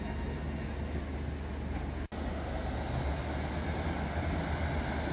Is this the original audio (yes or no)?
yes